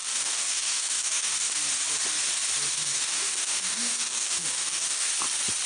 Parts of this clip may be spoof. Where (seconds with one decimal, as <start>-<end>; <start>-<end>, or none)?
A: 0.0-1.6; 2.7-5.1